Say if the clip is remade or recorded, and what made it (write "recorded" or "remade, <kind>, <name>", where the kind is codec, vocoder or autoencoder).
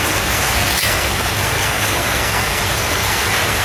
remade, codec, SNAC